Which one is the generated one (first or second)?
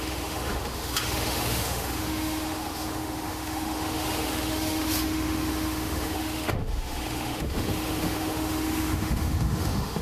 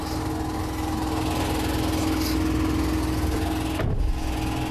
first